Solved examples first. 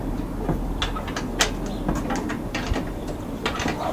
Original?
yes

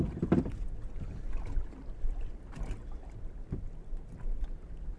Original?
yes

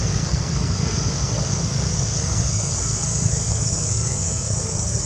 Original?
no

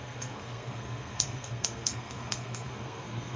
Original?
no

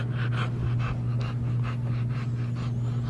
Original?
yes